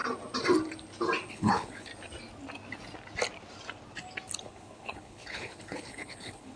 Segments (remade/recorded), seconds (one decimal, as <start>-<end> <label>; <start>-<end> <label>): 0.0-1.3 recorded; 1.3-1.9 remade; 1.9-4.4 recorded; 4.4-6.6 remade